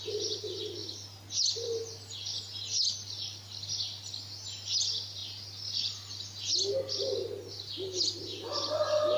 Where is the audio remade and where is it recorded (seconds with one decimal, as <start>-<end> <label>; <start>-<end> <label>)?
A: 0.0-9.2 recorded